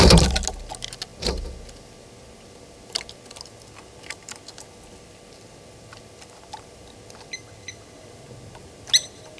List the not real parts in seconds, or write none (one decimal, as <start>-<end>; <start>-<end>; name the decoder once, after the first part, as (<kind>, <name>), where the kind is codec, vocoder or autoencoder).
none